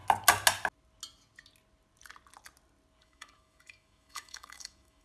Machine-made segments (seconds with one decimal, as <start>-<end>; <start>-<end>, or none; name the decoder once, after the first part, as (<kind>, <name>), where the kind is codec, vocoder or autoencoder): 3.0-5.0 (autoencoder, DAC-VAE)